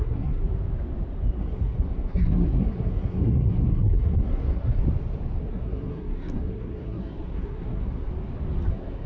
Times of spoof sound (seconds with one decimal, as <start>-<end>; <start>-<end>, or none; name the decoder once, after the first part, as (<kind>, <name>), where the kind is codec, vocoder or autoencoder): 0.0-0.4 (codec, SNAC); 1.4-4.8; 5.5-8.1; 8.7-9.1